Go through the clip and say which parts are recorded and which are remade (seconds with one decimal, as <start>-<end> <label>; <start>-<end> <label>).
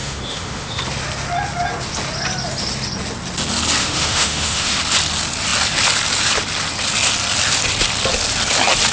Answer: 0.0-0.8 remade; 0.8-3.8 recorded; 3.8-4.8 remade; 4.8-8.9 recorded